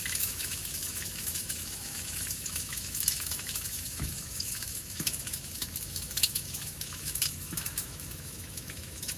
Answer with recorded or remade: remade